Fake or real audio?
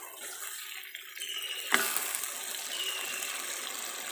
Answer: real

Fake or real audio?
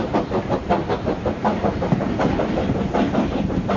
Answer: real